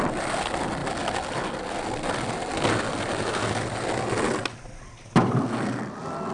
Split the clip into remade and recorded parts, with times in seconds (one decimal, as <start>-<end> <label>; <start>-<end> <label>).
0.0-6.3 recorded